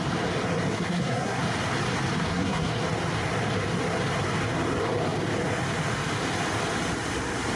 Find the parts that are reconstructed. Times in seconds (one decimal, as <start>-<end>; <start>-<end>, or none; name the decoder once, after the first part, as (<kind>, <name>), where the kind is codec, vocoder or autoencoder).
0.7-1.4 (codec, SNAC); 2.3-2.8